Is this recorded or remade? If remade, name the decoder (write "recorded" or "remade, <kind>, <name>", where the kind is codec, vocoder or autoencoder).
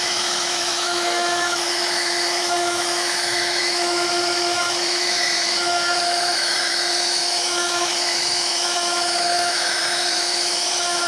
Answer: remade, autoencoder, DAC-VAE